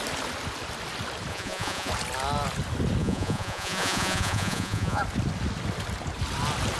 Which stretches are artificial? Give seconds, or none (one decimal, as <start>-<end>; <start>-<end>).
1.3-1.9; 3.0-5.0